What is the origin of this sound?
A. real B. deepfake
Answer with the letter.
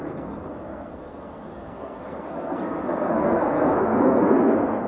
B